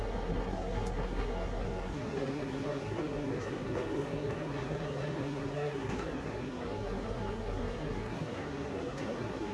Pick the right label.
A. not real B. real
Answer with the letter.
A